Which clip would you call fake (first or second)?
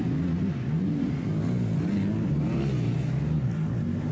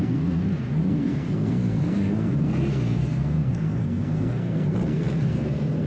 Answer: second